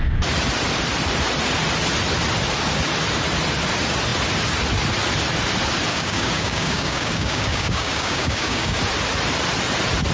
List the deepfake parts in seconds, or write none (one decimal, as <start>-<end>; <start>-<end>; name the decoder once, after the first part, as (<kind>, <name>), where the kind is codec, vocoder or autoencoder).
5.9-8.8 (codec, DAC)

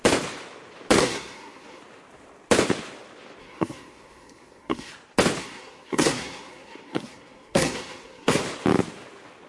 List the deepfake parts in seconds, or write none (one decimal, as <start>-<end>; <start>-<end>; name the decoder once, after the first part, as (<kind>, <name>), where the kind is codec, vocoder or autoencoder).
1.0-1.8 (codec, SNAC); 3.4-4.9; 5.4-8.4

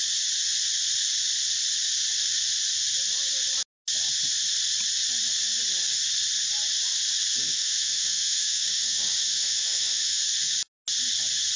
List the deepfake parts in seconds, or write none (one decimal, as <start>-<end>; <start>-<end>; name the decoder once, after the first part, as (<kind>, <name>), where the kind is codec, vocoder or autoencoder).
7.3-10.3 (autoencoder, DAC-VAE)